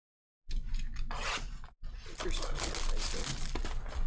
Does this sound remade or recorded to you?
recorded